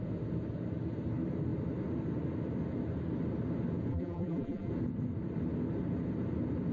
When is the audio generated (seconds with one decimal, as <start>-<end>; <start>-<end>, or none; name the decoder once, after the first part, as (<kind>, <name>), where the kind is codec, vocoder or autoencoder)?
3.9-4.7 (vocoder, BigVGAN v2)